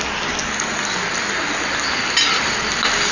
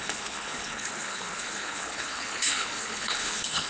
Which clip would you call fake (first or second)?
second